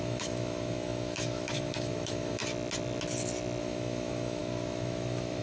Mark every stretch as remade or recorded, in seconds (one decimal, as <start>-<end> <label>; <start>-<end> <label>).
0.0-2.4 remade; 2.4-3.6 recorded; 3.6-5.4 remade